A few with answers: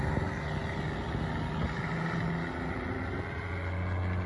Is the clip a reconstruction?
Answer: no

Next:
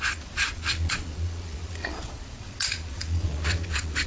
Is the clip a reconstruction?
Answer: yes